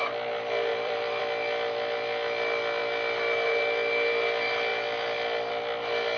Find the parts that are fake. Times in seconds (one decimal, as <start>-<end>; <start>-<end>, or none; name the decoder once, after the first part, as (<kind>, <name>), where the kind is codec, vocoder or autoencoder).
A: 0.7-1.2 (vocoder, BigVGAN v2)